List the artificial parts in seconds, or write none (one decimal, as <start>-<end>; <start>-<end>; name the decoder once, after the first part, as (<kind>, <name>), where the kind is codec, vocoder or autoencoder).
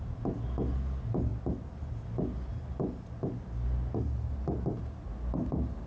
none